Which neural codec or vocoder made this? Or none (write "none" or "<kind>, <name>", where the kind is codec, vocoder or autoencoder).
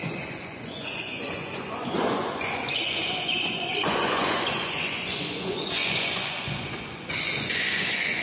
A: vocoder, Vocos